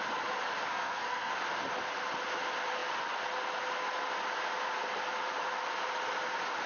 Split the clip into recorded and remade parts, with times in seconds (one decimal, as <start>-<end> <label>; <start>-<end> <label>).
0.0-0.7 recorded; 0.7-1.3 remade; 1.3-6.7 recorded